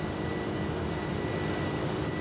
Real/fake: real